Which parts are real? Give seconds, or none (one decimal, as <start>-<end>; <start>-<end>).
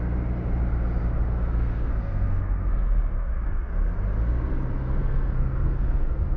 0.0-1.3; 2.7-3.2; 3.7-5.0